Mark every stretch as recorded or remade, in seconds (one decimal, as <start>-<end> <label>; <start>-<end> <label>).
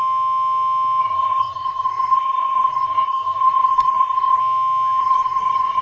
0.0-1.0 recorded; 1.0-4.4 remade; 4.4-5.0 recorded; 5.0-5.8 remade